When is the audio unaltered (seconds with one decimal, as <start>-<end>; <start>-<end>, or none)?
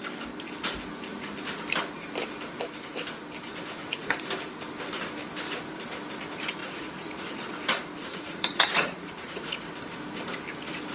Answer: 0.0-3.8; 4.3-6.6; 7.4-8.0; 9.6-10.9